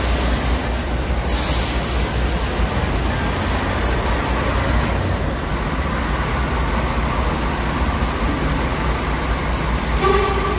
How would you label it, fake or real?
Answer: real